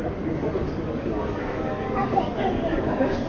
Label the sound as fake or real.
fake